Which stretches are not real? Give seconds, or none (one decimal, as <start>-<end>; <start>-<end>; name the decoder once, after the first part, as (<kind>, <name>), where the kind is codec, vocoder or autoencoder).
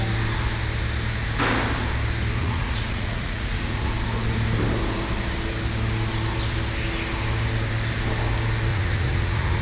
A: 2.4-3.9 (vocoder, Vocos); 8.7-9.6